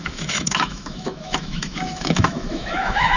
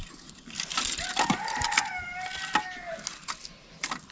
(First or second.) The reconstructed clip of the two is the first